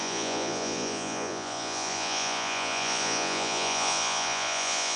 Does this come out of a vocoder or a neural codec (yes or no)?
yes